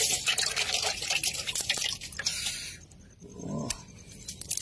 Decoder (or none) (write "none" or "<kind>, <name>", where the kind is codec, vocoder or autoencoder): none